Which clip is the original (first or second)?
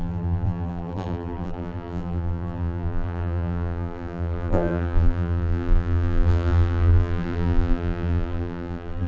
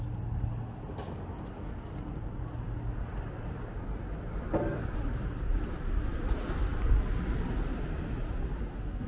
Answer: second